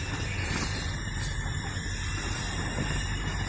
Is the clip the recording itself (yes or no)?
yes